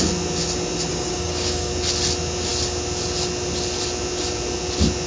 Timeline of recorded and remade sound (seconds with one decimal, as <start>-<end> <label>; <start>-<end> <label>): 0.0-0.9 recorded; 0.9-1.7 remade; 1.7-5.1 recorded